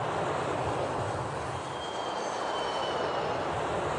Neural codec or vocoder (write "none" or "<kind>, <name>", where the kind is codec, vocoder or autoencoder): vocoder, BigVGAN v2